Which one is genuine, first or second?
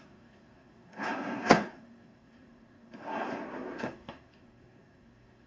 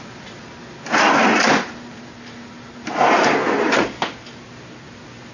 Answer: second